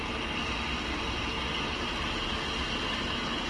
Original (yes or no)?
yes